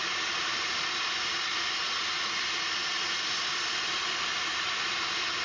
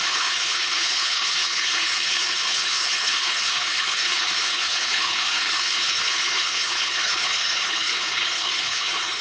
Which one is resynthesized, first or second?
second